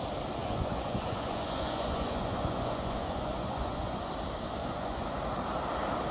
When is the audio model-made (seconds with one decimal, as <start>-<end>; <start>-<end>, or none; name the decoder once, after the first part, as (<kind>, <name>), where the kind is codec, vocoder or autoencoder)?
0.4-4.1 (vocoder, Vocos); 4.6-5.2